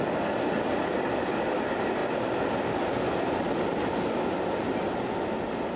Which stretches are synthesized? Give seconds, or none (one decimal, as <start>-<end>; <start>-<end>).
none